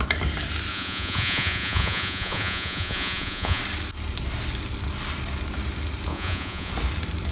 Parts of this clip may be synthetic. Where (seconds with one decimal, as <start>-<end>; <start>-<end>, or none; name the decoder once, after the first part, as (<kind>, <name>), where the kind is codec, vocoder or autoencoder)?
0.7-3.6 (vocoder, Vocos); 6.1-6.7